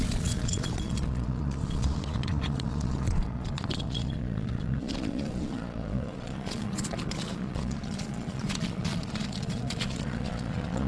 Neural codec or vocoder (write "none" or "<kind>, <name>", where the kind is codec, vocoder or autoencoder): vocoder, Vocos